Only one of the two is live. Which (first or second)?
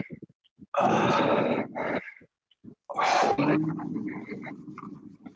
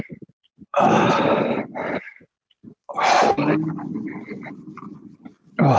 first